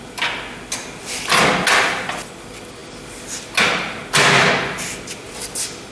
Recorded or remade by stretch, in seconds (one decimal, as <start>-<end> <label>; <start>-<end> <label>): 0.0-5.9 recorded